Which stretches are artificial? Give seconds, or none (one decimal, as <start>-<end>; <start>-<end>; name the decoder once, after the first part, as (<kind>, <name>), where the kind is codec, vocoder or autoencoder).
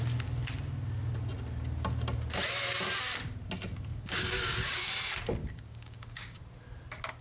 3.9-4.9 (codec, DAC); 5.4-6.4